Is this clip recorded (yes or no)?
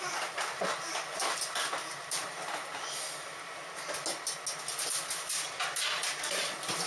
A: yes